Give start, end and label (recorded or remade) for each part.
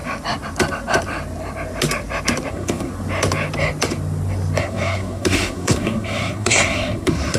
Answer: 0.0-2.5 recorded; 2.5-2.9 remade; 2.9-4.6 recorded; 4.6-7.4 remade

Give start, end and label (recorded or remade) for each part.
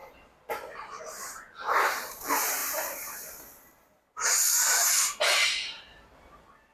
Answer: 0.0-6.7 recorded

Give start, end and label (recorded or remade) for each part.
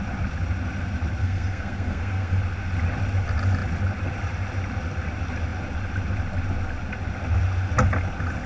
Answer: 0.0-1.2 recorded; 1.2-2.4 remade; 2.4-8.5 recorded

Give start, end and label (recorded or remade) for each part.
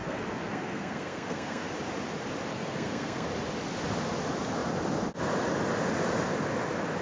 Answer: 0.0-1.7 remade; 1.7-2.5 recorded; 2.5-3.3 remade; 3.3-7.0 recorded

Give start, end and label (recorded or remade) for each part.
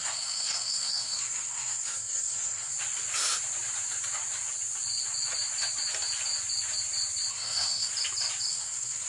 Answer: 0.0-2.7 remade; 2.7-7.3 recorded; 7.3-7.9 remade; 7.9-8.5 recorded; 8.5-9.1 remade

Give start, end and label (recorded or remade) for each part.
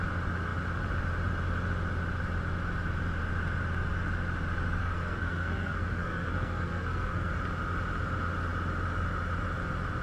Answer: 0.0-4.8 recorded; 4.8-7.3 remade; 7.3-10.0 recorded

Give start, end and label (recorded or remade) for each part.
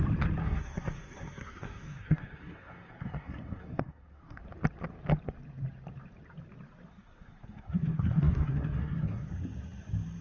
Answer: 0.0-0.4 recorded; 0.4-4.4 remade; 4.4-6.9 recorded; 6.9-9.3 remade; 9.3-10.2 recorded